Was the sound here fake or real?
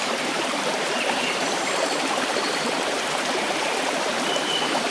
fake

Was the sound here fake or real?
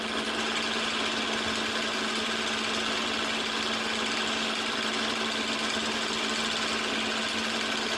real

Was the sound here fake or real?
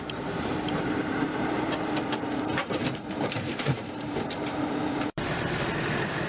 fake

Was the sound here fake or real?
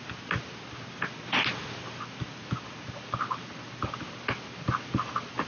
real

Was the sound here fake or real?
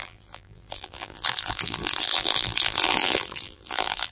fake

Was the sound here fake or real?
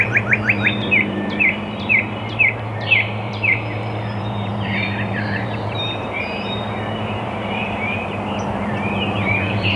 fake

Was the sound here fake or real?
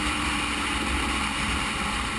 real